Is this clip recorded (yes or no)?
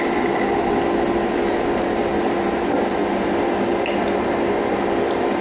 yes